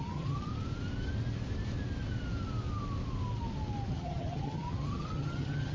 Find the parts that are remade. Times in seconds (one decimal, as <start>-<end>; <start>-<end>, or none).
0.0-0.5; 3.9-5.7